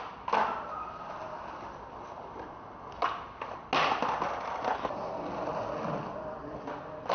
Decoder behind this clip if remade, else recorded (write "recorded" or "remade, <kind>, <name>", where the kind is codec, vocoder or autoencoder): recorded